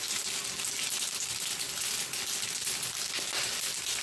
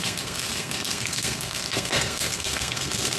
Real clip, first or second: first